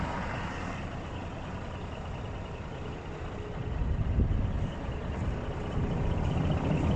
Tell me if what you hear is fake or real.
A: real